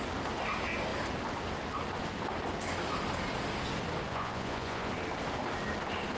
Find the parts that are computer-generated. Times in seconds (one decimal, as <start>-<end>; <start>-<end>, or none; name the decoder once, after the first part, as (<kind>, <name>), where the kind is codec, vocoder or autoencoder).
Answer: 4.1-4.9 (vocoder, Vocos)